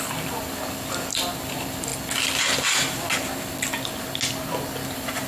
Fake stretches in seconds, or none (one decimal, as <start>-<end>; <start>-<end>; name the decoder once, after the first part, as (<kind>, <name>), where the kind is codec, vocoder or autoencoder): 0.0-1.9 (vocoder, BigVGAN v2)